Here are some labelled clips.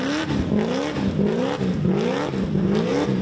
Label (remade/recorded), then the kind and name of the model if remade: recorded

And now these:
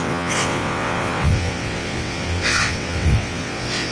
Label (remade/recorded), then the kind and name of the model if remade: remade, vocoder, WaveNeXt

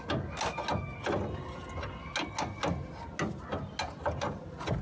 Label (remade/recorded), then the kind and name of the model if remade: recorded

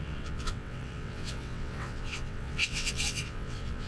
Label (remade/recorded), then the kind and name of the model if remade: remade, vocoder, WaveNeXt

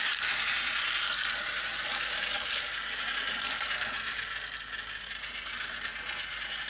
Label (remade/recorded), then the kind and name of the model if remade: recorded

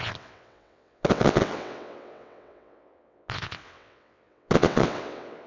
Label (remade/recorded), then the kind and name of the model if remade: remade, vocoder, WaveNeXt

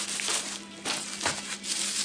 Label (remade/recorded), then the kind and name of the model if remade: recorded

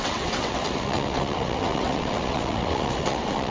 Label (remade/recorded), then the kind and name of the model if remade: remade, vocoder, WaveNeXt